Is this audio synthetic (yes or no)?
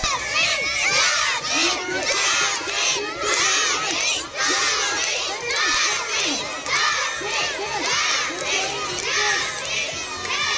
no